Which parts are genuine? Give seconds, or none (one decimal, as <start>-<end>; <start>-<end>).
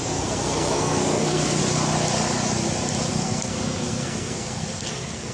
1.6-3.1